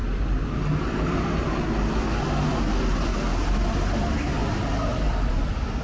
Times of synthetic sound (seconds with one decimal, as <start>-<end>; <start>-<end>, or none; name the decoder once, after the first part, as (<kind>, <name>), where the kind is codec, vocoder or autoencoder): none